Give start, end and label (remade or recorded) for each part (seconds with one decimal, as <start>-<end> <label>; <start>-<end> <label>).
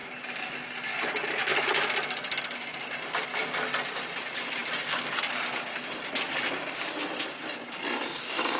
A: 0.0-8.6 recorded